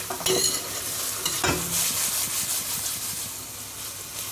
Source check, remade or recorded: recorded